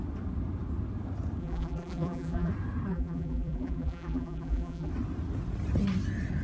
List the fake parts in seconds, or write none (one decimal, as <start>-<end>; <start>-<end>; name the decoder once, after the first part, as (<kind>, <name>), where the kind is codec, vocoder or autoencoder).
1.4-2.5 (vocoder, BigVGAN v2); 2.9-4.9